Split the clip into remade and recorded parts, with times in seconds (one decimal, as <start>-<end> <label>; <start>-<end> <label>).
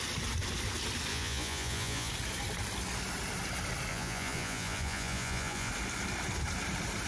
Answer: 0.0-1.1 recorded; 1.1-2.1 remade; 2.1-3.9 recorded; 3.9-5.7 remade; 5.7-7.1 recorded